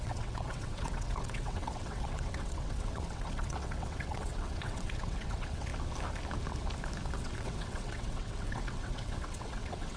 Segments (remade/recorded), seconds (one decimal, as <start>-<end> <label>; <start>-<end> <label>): 0.0-5.7 remade; 5.7-7.1 recorded; 7.1-10.0 remade